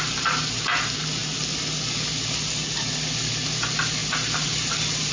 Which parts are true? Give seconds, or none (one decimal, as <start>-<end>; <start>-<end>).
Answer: 0.0-5.1